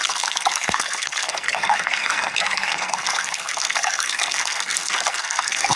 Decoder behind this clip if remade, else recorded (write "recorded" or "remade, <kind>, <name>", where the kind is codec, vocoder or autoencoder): remade, codec, SNAC